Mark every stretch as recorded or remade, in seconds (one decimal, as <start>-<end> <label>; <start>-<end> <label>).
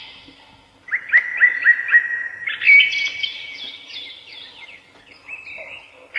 0.0-6.2 recorded